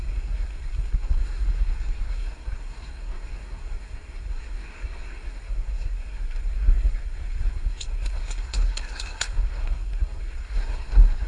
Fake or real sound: fake